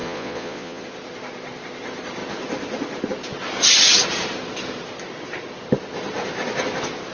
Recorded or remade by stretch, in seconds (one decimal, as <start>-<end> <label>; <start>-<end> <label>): 0.0-0.8 remade; 0.8-7.1 recorded